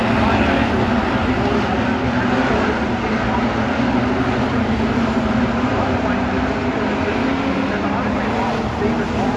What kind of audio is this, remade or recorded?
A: recorded